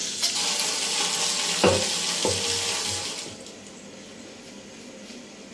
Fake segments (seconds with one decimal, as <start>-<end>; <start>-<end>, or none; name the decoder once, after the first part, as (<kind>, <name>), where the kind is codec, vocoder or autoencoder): none